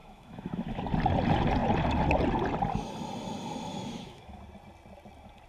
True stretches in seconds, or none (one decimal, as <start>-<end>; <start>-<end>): 0.8-3.7; 4.4-5.5